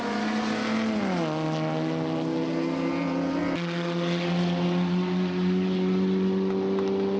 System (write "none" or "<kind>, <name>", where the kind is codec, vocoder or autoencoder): none